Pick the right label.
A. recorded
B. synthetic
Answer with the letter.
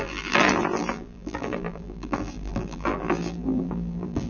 B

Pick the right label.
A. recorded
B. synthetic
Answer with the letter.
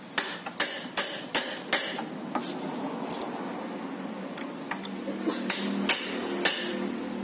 A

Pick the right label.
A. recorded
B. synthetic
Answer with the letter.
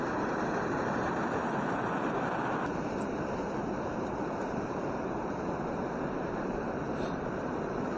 B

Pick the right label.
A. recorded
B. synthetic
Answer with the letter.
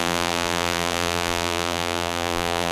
B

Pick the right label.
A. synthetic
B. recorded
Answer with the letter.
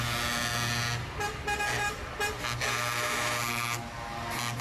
B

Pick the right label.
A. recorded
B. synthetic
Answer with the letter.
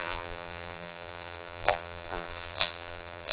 B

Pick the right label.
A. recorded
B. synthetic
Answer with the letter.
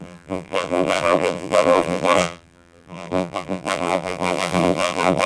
B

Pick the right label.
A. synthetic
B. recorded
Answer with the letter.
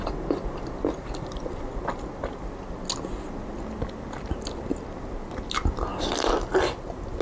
B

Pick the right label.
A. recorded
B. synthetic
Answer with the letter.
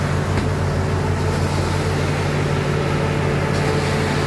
A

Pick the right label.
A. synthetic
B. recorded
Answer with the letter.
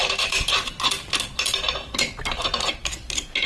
B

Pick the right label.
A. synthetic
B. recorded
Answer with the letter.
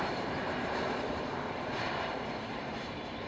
A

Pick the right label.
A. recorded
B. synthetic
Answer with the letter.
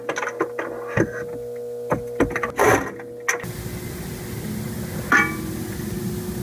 A